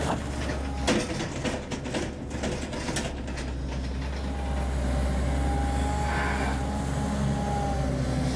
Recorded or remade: recorded